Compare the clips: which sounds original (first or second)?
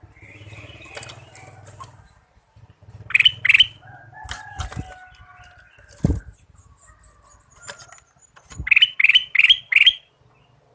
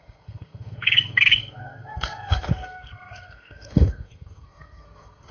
first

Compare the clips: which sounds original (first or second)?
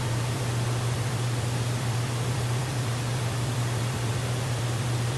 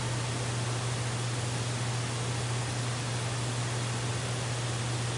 second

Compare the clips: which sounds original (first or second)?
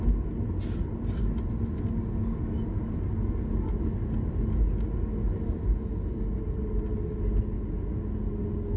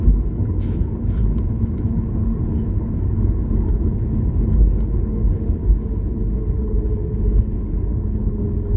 first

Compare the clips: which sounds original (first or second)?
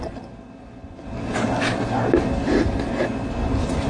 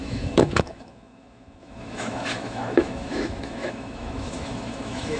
first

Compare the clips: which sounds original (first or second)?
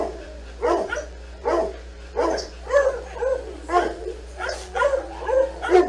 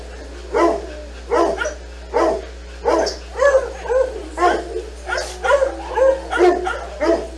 second